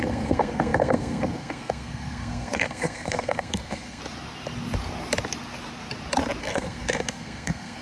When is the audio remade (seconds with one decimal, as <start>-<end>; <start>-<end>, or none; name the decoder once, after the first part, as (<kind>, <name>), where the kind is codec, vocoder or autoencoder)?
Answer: 0.0-4.0 (codec, SNAC); 6.4-7.8